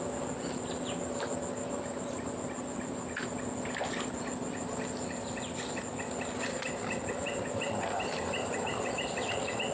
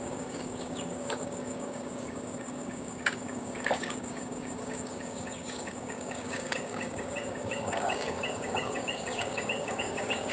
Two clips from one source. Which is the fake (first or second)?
second